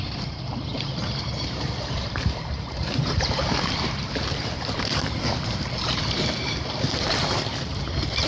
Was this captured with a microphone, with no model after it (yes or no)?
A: no